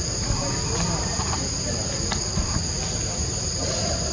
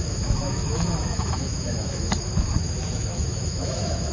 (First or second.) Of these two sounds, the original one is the first